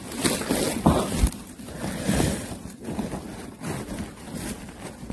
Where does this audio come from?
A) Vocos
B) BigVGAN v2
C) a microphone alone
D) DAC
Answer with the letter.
C